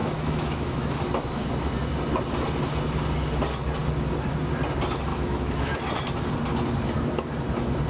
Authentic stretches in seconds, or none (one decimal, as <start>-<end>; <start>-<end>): 1.0-5.1; 5.8-7.9